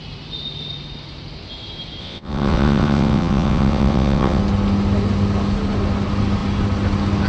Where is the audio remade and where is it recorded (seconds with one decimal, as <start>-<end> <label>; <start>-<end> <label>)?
0.0-2.0 recorded; 2.0-4.4 remade; 4.4-7.3 recorded